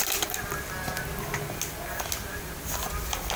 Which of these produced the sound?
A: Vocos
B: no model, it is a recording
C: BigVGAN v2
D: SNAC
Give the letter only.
B